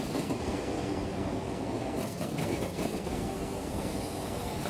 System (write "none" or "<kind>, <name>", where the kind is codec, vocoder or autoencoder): codec, SNAC